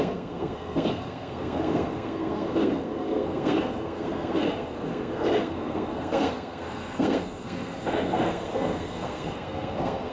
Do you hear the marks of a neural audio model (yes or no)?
yes